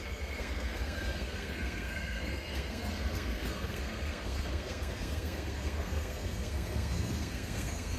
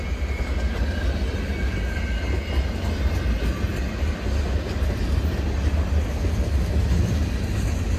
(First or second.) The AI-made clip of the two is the first